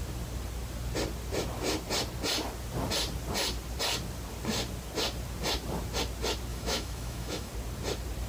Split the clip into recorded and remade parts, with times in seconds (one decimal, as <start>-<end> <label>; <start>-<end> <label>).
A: 0.0-6.5 recorded; 6.5-7.5 remade; 7.5-8.3 recorded